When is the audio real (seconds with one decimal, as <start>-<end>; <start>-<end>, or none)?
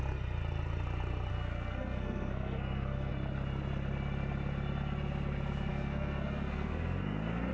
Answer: 0.0-1.3; 3.1-5.7